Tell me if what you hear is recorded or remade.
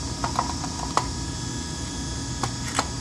recorded